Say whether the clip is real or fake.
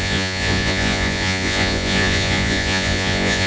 fake